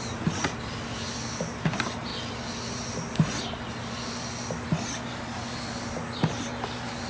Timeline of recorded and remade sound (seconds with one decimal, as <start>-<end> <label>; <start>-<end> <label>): 0.0-7.1 recorded